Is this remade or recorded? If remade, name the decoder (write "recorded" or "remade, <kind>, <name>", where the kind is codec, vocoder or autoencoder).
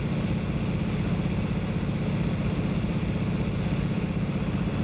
recorded